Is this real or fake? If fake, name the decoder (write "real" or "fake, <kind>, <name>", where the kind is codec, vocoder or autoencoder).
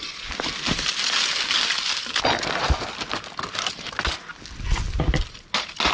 real